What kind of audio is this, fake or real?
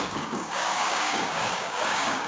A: fake